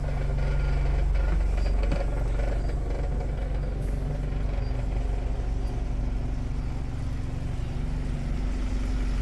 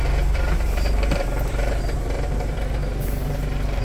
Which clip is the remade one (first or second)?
second